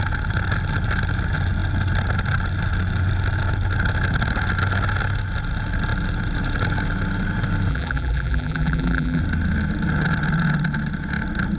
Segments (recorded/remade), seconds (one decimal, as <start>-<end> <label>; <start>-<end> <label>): 0.0-7.7 recorded; 7.7-9.2 remade; 9.2-11.6 recorded